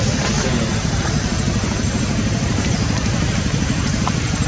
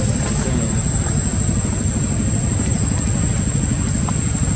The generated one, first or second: first